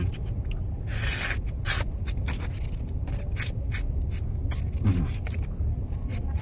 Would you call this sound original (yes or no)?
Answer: yes